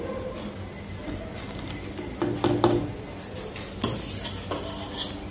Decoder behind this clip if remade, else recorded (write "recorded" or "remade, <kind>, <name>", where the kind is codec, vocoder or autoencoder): recorded